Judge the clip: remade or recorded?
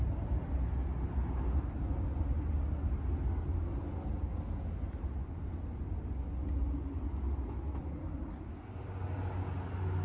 recorded